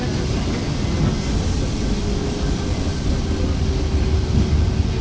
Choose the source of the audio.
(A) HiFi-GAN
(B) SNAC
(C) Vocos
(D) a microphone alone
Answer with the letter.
D